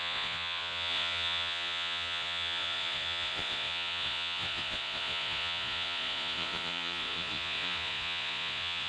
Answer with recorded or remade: remade